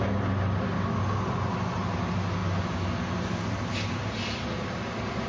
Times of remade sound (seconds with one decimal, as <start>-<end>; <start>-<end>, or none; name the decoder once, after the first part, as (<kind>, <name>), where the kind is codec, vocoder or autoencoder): none